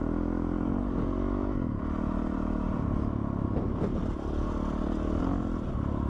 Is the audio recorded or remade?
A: recorded